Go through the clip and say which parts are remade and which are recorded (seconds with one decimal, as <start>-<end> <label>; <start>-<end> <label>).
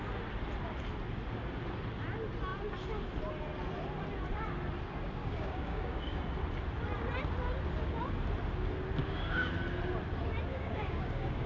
0.0-5.2 recorded; 5.2-6.2 remade; 6.2-9.0 recorded; 9.0-9.5 remade; 9.5-10.5 recorded; 10.5-11.5 remade